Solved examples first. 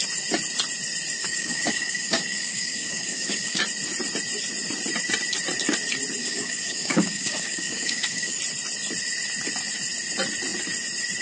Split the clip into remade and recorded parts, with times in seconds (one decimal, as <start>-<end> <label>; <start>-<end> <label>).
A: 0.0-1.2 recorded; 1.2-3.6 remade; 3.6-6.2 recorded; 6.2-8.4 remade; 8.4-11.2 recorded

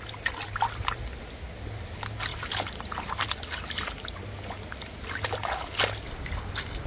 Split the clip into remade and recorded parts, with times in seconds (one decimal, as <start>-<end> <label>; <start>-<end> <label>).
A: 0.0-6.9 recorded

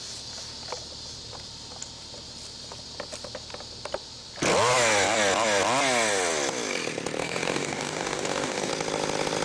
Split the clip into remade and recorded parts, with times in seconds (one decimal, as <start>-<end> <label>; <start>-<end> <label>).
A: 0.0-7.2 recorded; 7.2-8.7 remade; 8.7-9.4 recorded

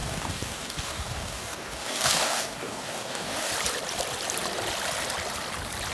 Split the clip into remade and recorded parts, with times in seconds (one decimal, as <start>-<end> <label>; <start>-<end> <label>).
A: 0.0-3.5 remade; 3.5-5.9 recorded

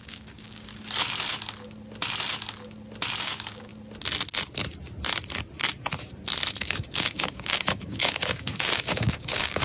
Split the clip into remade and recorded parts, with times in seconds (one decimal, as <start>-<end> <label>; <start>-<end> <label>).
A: 0.0-0.7 remade; 0.7-3.2 recorded; 3.2-3.7 remade; 3.7-6.6 recorded; 6.6-9.6 remade